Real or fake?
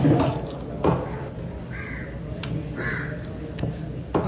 real